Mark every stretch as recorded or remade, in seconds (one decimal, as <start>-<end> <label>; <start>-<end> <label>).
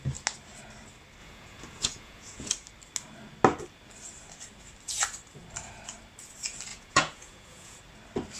0.0-1.2 recorded; 1.2-2.5 remade; 2.5-6.7 recorded; 6.7-7.8 remade; 7.8-8.4 recorded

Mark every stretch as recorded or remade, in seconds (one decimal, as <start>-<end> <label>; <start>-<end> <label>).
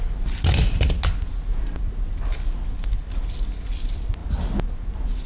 0.0-5.3 recorded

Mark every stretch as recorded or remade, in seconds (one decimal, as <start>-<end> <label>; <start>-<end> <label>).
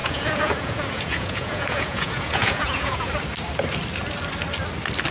0.0-3.1 remade; 3.1-5.1 recorded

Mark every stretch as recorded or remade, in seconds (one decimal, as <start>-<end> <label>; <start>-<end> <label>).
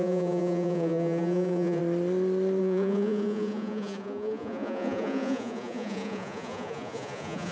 0.0-1.8 remade; 1.8-2.6 recorded; 2.6-7.5 remade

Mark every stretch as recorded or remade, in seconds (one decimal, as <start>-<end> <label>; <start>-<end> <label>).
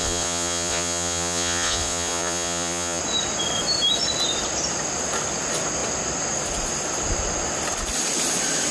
0.0-3.0 remade; 3.0-8.7 recorded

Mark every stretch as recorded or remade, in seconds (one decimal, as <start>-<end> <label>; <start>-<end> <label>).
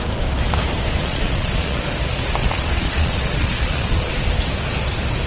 0.0-1.0 recorded; 1.0-1.8 remade; 1.8-2.4 recorded; 2.4-4.1 remade; 4.1-5.3 recorded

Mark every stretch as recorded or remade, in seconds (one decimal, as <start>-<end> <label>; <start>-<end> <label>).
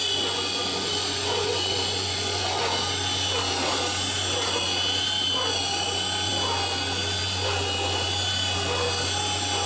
0.0-2.6 remade; 2.6-9.7 recorded